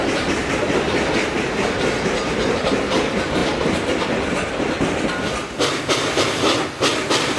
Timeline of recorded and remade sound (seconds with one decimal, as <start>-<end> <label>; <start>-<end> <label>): 0.0-3.4 recorded; 3.4-5.1 remade; 5.1-7.4 recorded